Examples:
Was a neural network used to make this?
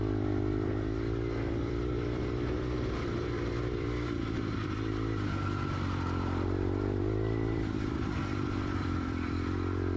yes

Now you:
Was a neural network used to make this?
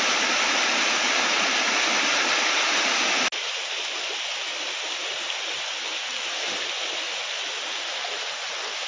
no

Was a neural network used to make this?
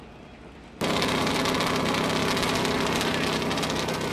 no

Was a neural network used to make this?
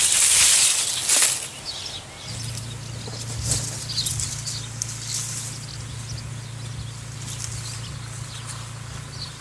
no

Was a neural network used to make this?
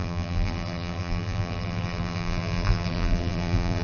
yes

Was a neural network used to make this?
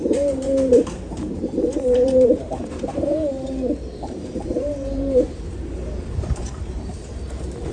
yes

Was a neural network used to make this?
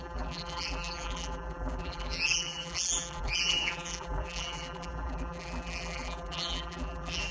yes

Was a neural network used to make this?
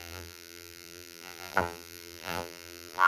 yes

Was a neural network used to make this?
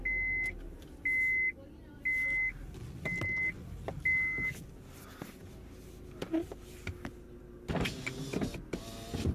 no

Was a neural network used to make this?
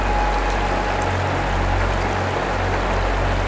no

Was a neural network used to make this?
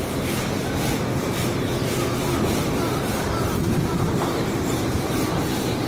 yes